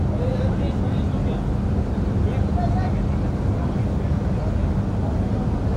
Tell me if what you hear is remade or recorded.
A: recorded